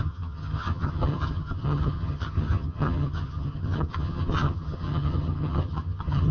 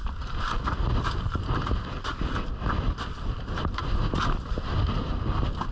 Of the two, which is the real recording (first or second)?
second